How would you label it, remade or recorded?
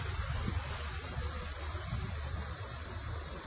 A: remade